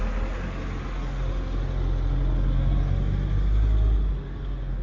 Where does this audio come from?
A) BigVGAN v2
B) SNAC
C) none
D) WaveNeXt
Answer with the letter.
C